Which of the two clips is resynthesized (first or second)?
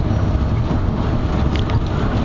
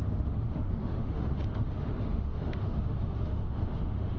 second